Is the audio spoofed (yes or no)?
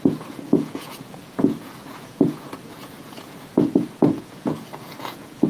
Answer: yes